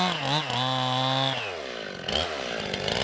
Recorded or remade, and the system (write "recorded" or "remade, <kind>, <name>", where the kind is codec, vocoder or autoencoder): recorded